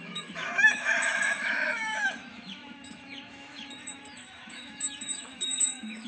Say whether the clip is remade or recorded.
remade